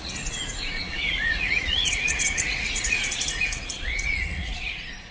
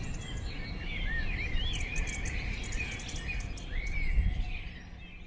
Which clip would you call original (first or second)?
second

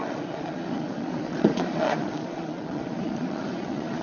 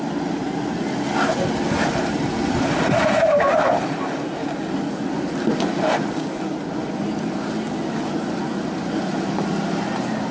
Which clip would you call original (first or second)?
second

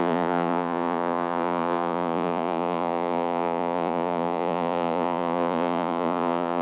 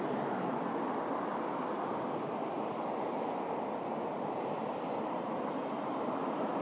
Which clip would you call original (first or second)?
second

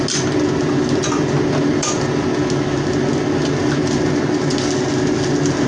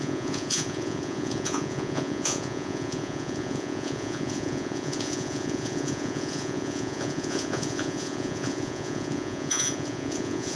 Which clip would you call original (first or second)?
first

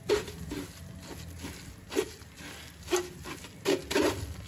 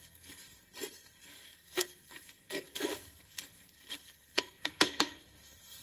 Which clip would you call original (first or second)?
first